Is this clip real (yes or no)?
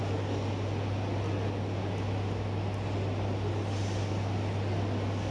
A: yes